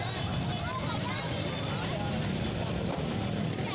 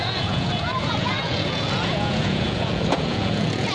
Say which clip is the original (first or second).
first